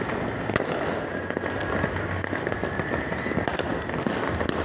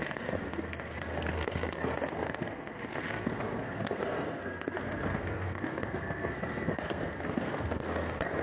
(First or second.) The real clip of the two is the first